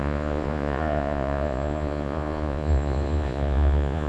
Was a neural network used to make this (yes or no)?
yes